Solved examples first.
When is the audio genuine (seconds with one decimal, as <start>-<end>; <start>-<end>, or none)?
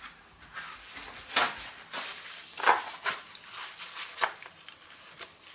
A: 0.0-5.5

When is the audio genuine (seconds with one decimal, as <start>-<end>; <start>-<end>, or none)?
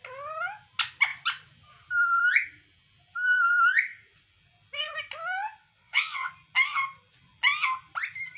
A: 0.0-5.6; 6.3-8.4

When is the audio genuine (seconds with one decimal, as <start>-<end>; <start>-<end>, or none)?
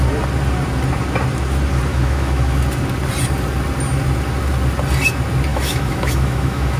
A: 0.0-1.9; 2.6-5.5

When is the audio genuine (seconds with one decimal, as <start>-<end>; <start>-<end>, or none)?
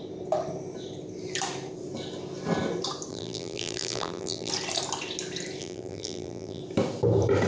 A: 0.0-3.1; 4.5-5.6; 6.6-7.5